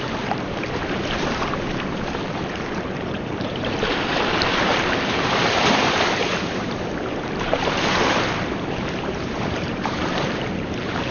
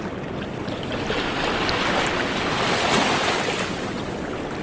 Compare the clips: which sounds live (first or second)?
second